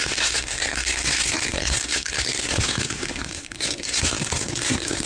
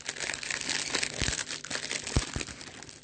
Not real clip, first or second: first